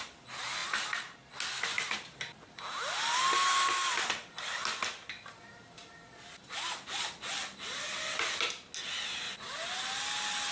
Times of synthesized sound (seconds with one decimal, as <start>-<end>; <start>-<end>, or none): none